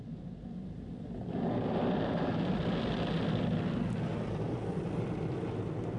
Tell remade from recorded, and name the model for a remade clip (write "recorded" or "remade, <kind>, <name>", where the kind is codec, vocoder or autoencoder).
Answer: recorded